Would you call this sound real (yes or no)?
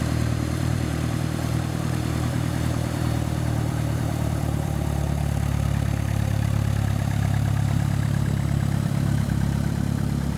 no